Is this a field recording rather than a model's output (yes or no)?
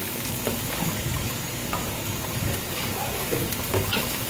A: no